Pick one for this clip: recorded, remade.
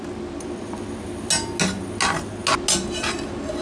recorded